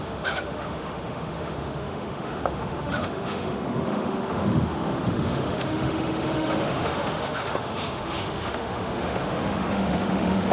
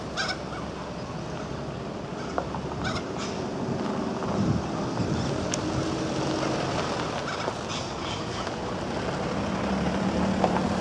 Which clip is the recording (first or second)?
second